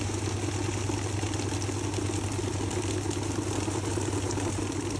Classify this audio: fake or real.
real